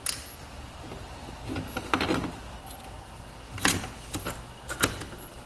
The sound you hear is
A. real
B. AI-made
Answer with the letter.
A